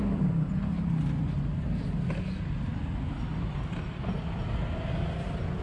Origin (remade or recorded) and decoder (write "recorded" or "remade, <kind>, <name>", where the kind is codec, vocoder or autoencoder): recorded